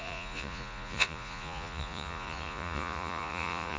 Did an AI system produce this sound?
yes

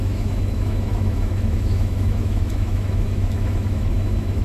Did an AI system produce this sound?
yes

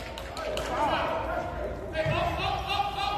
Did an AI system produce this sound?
no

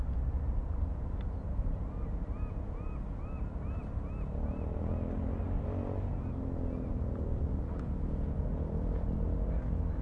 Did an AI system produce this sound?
no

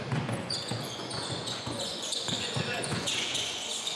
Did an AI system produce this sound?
yes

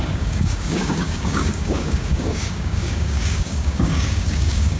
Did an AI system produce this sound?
yes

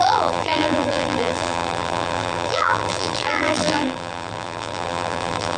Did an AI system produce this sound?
yes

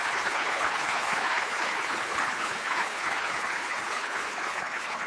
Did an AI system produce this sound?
yes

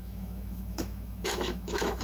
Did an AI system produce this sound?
yes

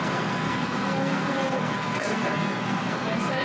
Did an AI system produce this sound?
yes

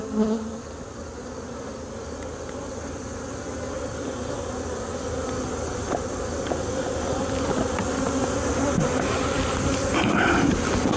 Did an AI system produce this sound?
no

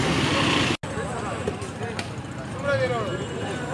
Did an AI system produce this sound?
no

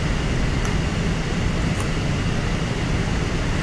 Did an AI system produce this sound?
no